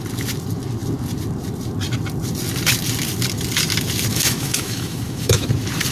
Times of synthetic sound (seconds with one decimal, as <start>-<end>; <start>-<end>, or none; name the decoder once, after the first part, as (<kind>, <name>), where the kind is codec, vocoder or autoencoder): 4.1-5.5 (autoencoder, DAC-VAE)